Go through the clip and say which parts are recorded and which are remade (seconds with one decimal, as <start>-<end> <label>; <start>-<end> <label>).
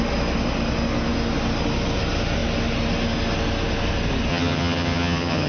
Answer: 0.0-4.3 recorded; 4.3-5.5 remade